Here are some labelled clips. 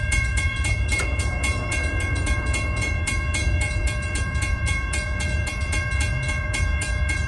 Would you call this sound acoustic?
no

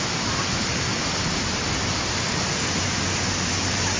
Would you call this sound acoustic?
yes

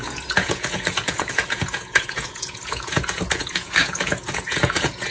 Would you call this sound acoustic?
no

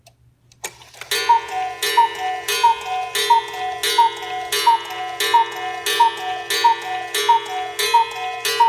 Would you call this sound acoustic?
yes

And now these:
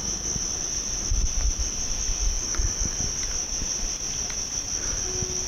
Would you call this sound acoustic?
yes